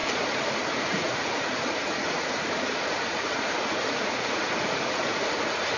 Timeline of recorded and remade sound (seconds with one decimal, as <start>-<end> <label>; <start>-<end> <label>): 0.0-0.6 recorded; 0.6-5.8 remade